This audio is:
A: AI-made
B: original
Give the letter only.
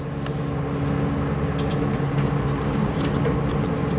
B